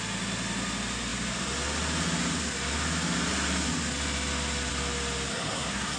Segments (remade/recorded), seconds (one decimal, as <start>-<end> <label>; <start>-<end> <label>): 0.0-5.3 recorded; 5.3-6.0 remade